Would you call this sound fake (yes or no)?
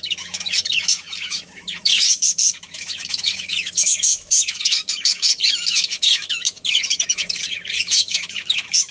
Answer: yes